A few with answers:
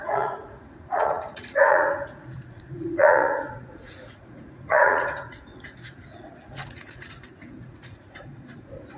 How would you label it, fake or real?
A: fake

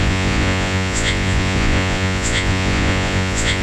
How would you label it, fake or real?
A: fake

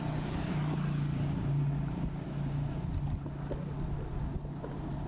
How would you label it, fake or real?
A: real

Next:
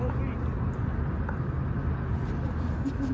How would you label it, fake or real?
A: real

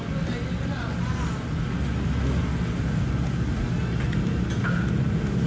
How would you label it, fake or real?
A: real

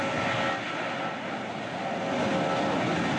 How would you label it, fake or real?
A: real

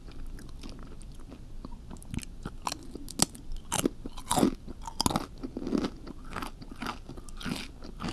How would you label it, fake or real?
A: real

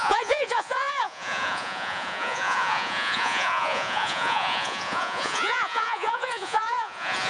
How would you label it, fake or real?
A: fake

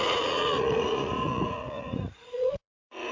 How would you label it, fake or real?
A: fake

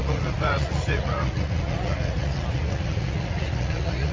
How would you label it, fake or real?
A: fake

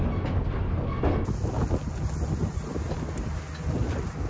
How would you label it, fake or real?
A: real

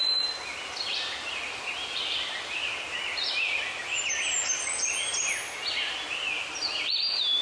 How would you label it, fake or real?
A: real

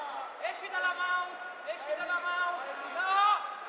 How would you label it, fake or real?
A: real